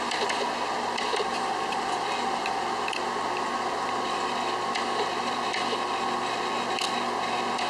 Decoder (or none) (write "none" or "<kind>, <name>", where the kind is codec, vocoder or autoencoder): none